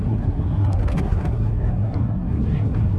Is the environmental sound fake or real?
fake